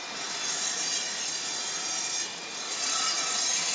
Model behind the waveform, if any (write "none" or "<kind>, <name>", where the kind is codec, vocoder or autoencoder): vocoder, Vocos